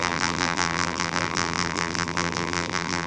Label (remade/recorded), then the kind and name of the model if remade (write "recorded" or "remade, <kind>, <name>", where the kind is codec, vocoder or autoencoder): remade, vocoder, BigVGAN v2